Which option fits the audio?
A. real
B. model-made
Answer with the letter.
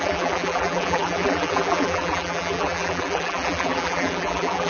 B